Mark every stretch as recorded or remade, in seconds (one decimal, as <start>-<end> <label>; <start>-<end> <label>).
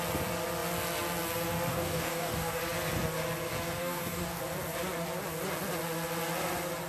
0.0-1.7 recorded; 1.7-2.6 remade; 2.6-3.8 recorded; 3.8-4.4 remade; 4.4-6.9 recorded